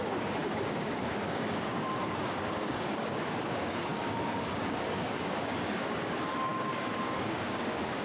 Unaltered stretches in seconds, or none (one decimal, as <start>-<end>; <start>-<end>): none